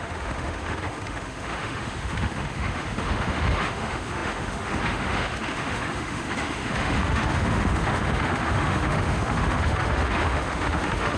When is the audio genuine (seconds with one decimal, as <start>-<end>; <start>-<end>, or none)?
none